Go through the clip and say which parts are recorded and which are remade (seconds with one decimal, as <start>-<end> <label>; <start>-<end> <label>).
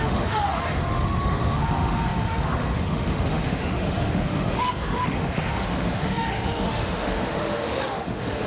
0.0-8.5 remade